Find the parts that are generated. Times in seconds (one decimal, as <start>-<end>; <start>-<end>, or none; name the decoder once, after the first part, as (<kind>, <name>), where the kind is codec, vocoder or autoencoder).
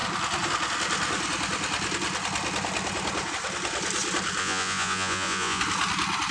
4.4-5.6 (vocoder, Vocos)